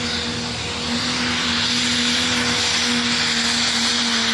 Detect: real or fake real